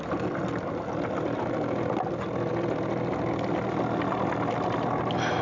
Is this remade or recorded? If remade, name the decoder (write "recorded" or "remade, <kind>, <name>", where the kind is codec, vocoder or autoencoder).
recorded